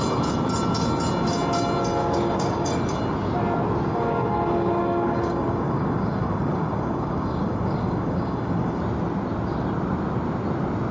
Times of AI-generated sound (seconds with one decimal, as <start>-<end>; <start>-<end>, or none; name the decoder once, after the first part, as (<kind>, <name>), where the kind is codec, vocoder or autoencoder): 2.0-2.8 (codec, DAC); 3.9-8.8